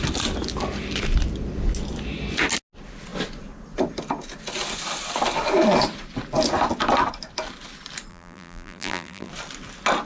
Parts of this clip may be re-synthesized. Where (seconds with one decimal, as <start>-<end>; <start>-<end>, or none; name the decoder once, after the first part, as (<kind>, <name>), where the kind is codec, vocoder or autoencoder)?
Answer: 8.1-9.3 (vocoder, BigVGAN v2)